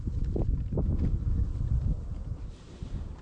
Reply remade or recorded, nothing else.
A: recorded